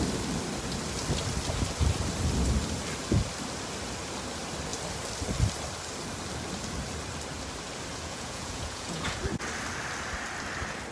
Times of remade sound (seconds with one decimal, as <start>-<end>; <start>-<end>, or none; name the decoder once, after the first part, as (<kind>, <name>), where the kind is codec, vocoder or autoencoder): 7.9-9.2 (vocoder, Vocos)